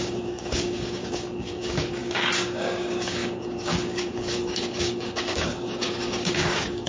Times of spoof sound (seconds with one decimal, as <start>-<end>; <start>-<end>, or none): 0.0-6.9